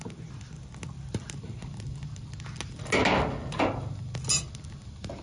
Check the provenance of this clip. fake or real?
real